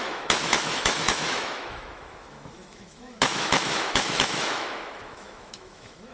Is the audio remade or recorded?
remade